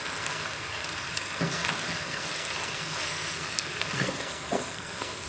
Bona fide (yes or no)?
no